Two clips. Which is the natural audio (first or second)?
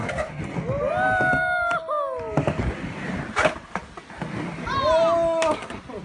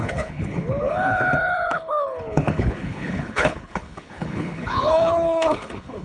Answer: first